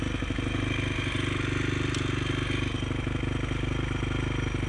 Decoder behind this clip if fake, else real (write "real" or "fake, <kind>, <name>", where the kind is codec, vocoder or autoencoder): real